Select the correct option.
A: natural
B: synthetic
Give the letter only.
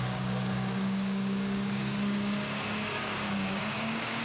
B